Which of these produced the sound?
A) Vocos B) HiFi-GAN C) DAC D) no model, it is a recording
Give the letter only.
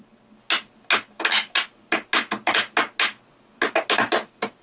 D